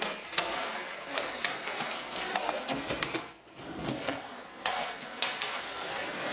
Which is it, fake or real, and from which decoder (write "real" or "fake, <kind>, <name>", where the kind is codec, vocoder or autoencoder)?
fake, codec, SNAC